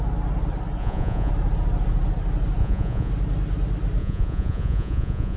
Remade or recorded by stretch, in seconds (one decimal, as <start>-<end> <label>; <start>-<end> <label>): 0.0-0.8 recorded; 0.8-1.3 remade; 1.3-2.6 recorded; 2.6-3.1 remade; 3.1-4.0 recorded; 4.0-5.4 remade